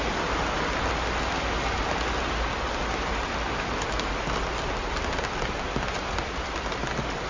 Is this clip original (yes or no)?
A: yes